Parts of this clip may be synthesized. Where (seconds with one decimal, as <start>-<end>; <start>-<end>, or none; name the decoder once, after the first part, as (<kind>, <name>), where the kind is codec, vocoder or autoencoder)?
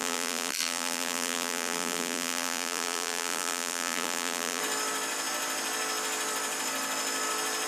0.0-4.6 (vocoder, BigVGAN v2)